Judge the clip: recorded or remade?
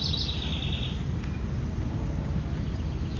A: recorded